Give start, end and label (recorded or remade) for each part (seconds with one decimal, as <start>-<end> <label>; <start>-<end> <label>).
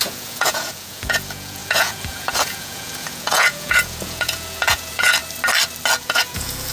0.0-5.2 remade; 5.2-6.0 recorded; 6.0-6.7 remade